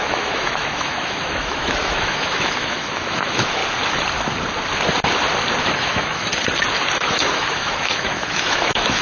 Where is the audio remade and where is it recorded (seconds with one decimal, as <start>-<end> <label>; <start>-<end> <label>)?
0.0-3.6 remade; 3.6-5.6 recorded; 5.6-6.3 remade; 6.3-7.0 recorded; 7.0-9.0 remade